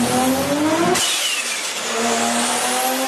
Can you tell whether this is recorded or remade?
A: recorded